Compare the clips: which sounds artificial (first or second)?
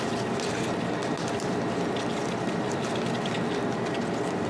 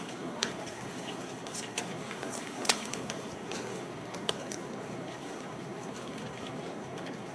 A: second